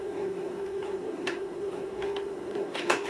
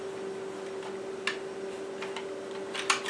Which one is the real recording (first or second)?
second